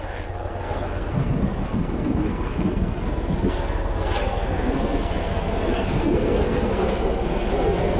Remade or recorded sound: remade